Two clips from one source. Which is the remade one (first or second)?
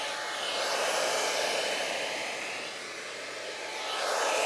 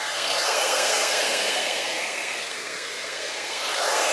second